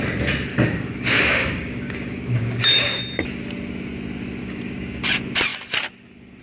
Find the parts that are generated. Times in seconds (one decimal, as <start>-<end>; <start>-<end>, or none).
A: 0.5-3.0; 4.4-5.0